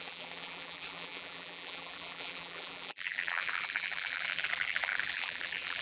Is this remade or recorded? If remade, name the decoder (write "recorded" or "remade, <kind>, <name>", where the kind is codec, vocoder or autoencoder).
remade, vocoder, BigVGAN v2